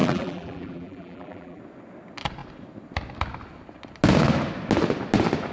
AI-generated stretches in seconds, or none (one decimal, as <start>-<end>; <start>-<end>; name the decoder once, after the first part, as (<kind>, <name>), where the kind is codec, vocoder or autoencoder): 0.0-1.6 (vocoder, BigVGAN v2)